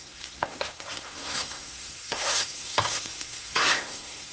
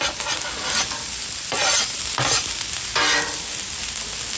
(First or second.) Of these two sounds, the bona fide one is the second